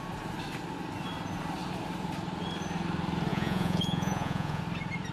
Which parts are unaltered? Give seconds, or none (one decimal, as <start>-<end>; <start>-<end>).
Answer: 0.0-3.3; 4.6-5.1